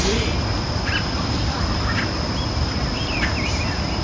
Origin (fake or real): real